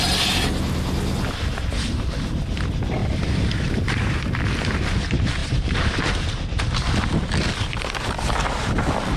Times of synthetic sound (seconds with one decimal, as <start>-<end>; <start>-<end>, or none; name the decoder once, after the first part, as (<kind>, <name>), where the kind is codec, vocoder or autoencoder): 3.0-4.1 (vocoder, BigVGAN v2); 5.4-6.6